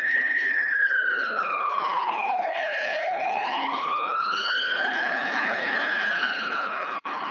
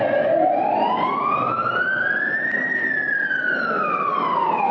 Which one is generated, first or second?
first